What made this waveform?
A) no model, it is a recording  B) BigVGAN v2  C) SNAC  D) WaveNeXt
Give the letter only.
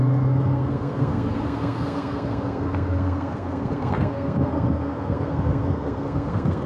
C